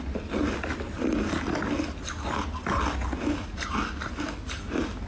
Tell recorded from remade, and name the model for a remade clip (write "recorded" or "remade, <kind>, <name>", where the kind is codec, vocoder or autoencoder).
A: recorded